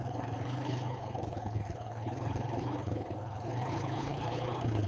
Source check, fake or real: fake